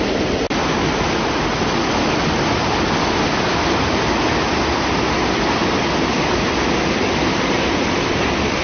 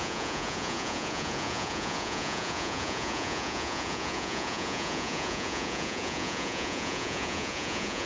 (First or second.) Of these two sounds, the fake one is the second